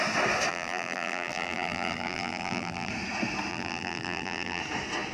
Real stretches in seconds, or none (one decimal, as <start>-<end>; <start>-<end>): 0.0-0.5; 2.9-3.5; 4.6-5.1